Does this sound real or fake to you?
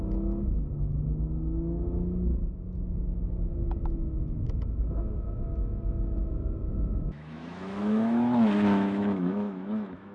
fake